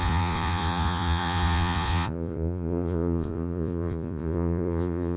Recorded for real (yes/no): no